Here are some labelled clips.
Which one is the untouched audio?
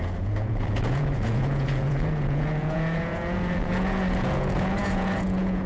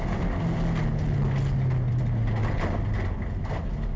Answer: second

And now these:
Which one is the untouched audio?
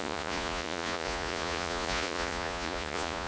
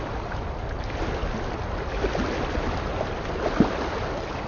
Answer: second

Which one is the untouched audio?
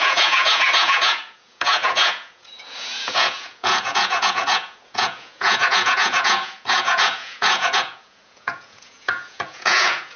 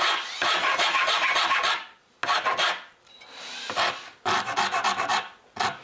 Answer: second